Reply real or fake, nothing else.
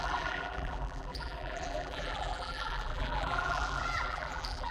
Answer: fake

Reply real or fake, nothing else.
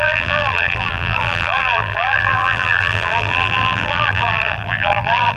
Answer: fake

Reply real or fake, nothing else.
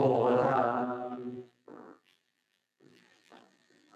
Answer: fake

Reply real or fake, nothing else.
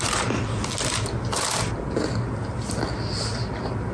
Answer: real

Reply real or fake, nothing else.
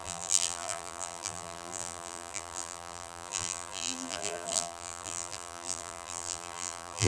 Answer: fake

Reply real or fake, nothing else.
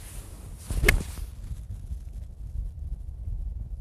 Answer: real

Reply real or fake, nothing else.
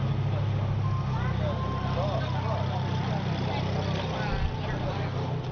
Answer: real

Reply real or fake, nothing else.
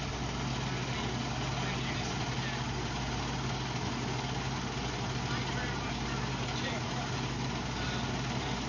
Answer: real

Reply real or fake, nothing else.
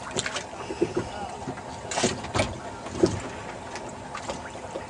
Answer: real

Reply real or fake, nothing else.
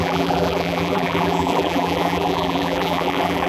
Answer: fake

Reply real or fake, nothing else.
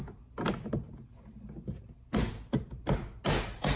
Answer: real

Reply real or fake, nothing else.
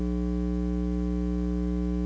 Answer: real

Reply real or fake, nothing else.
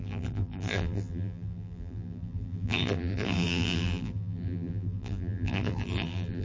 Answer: fake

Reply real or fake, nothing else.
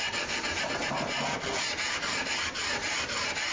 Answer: real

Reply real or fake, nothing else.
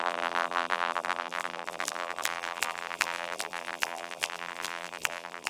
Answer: fake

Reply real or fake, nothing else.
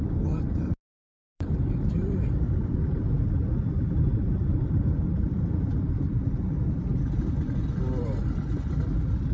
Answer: fake